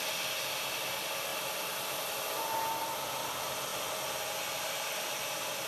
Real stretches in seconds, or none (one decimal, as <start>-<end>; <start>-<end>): 1.3-3.2; 3.7-5.2

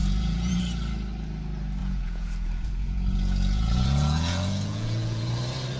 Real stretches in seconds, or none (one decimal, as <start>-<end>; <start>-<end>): 0.6-1.8; 5.3-5.8

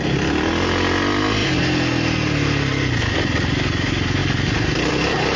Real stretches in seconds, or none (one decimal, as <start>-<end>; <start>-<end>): 0.0-5.4

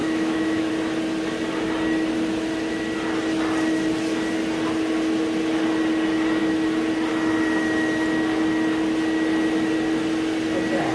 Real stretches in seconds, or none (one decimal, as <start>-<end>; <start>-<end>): 0.7-10.9

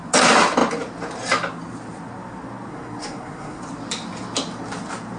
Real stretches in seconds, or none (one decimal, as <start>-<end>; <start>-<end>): 0.0-2.7; 3.6-5.2